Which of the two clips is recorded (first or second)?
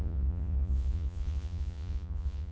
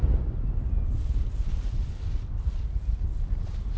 second